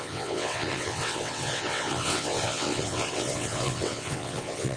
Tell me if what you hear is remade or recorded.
remade